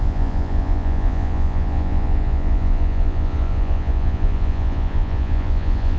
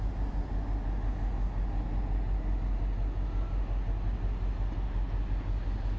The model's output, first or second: first